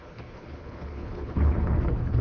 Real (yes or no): no